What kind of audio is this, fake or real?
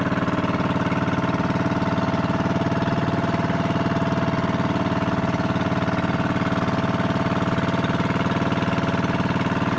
real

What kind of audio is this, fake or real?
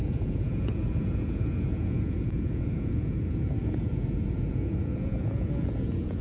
fake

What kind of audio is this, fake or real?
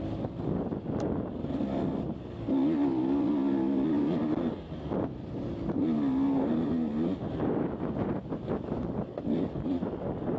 real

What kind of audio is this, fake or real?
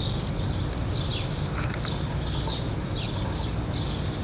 real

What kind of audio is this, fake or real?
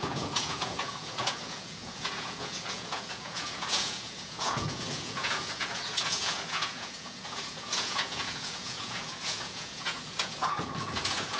fake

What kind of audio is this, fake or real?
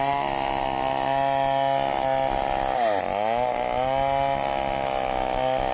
real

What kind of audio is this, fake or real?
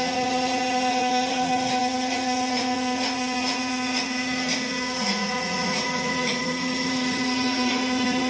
fake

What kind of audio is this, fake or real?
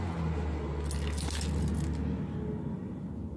real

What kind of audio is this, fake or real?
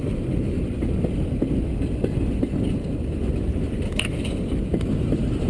real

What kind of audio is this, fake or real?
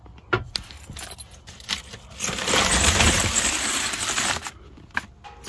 real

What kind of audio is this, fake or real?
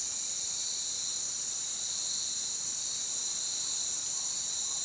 real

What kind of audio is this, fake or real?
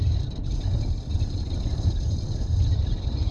real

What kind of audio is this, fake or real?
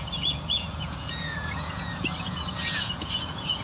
fake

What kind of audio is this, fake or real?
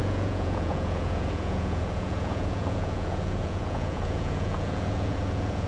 fake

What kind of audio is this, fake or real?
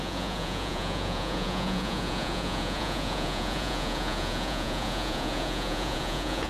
fake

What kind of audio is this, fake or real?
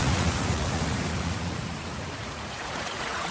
fake